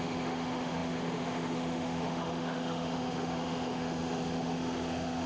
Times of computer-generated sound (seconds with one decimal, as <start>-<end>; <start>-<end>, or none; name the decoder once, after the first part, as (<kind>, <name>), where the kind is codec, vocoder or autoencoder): 0.0-5.3 (autoencoder, DAC-VAE)